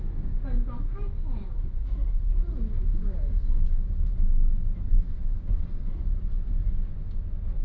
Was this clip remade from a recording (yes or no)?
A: no